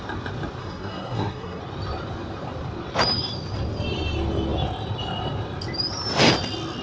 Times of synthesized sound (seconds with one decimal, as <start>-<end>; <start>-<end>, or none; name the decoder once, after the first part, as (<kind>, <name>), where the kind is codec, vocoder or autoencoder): 0.6-1.6 (codec, SNAC)